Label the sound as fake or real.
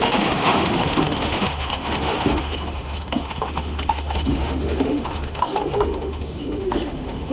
fake